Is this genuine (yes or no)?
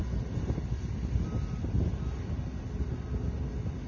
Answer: yes